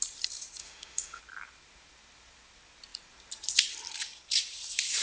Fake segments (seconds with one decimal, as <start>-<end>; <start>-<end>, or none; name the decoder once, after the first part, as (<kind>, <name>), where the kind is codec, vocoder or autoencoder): 0.6-1.2 (autoencoder, DAC-VAE)

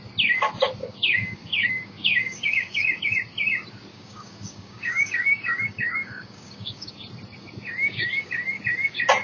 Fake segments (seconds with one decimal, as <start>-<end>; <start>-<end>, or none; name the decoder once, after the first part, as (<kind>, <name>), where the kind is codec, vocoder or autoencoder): 0.8-3.0 (codec, DAC); 3.9-6.9; 7.8-8.6